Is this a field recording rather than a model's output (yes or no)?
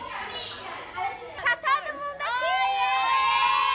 yes